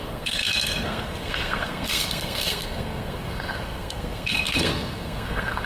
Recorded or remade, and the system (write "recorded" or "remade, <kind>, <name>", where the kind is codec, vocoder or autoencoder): remade, codec, SNAC